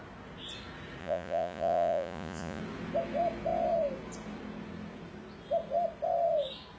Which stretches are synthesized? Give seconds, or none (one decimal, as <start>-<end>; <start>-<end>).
1.0-2.6